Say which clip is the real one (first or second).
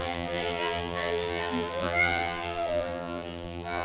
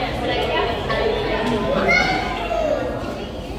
second